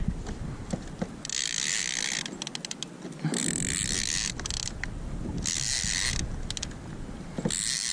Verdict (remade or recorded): recorded